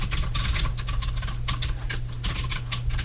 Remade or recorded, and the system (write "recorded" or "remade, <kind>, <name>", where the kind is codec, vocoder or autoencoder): recorded